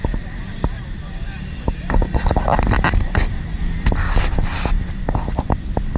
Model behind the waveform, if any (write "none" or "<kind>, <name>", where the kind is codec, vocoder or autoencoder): none